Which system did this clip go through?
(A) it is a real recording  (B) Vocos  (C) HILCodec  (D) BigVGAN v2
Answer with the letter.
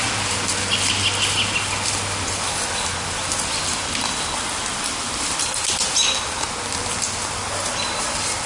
A